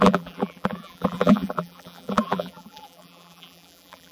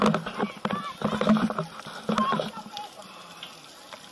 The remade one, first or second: first